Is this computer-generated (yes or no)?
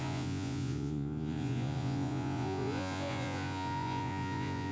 yes